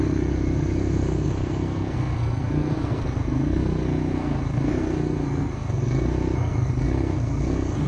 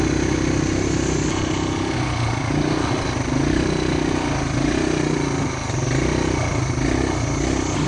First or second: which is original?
second